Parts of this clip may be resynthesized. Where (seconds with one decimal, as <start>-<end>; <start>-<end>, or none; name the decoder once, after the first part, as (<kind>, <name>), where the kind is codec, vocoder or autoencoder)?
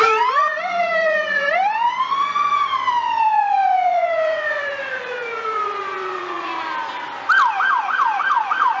0.0-6.5 (vocoder, Vocos); 7.8-8.8